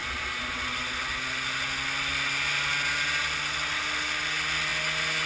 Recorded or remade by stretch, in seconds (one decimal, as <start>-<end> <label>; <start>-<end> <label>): 0.0-5.3 recorded